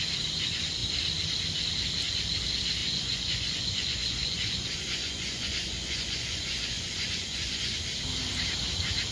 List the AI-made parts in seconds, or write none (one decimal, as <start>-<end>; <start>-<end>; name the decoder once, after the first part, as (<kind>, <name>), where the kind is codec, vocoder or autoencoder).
2.8-7.8 (vocoder, Vocos)